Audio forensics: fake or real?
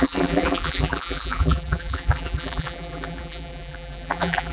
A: fake